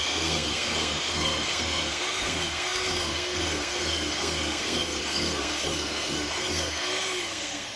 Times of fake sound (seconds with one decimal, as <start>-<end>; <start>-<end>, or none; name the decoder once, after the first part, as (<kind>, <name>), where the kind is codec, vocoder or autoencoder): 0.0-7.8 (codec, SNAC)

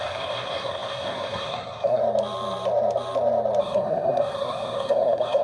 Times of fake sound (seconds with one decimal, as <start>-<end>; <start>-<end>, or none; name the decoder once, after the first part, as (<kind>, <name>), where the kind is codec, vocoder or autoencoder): 0.0-2.0 (codec, SNAC); 3.6-5.4

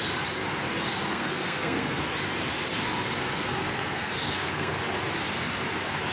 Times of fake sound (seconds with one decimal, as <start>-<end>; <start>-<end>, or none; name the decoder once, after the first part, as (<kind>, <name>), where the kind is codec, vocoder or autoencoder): 1.1-2.0 (codec, SNAC); 3.6-4.8